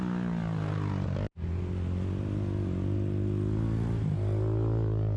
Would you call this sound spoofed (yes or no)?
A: no